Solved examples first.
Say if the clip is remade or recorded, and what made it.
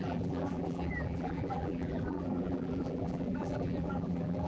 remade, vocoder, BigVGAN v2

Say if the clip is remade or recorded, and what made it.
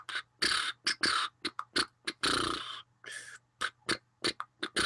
recorded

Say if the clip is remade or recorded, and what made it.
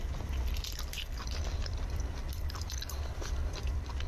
remade, vocoder, BigVGAN v2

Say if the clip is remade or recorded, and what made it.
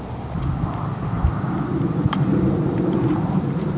remade, vocoder, BigVGAN v2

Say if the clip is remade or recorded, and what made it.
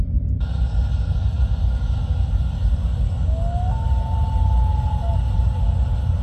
recorded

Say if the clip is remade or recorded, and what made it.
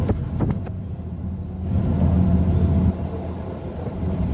recorded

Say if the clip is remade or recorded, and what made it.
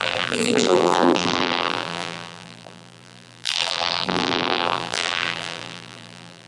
remade, vocoder, BigVGAN v2